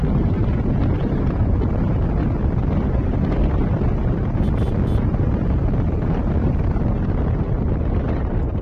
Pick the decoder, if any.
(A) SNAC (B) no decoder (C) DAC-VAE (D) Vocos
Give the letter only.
B